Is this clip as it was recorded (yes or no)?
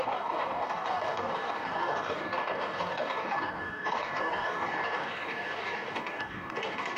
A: no